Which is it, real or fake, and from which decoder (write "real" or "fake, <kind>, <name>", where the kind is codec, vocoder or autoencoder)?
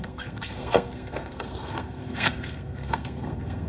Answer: fake, codec, SNAC